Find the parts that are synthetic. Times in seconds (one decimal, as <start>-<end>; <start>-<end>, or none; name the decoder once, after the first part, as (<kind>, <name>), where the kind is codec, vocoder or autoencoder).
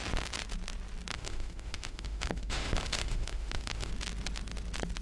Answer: 1.1-3.9 (autoencoder, DAC-VAE)